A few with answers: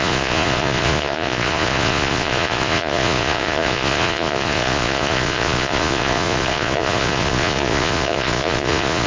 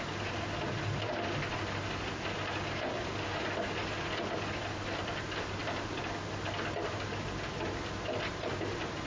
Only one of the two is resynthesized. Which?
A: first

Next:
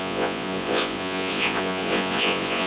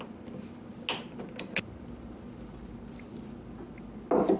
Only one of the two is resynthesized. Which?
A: first